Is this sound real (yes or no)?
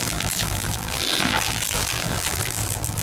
no